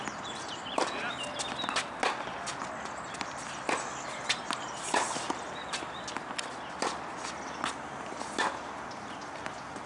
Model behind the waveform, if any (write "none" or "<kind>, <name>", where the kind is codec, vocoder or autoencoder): none